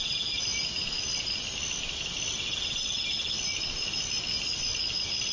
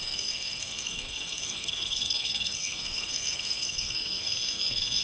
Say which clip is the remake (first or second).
second